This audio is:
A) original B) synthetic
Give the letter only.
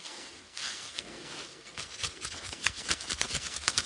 B